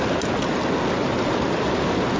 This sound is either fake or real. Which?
real